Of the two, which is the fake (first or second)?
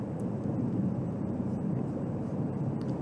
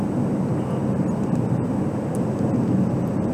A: first